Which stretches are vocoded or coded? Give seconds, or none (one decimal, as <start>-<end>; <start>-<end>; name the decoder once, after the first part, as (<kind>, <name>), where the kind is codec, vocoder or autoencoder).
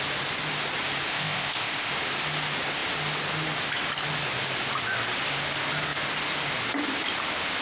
1.1-1.9 (codec, ZipCodec)